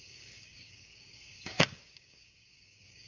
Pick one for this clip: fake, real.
fake